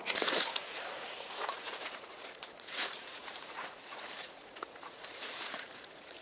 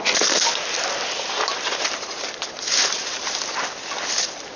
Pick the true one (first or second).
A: second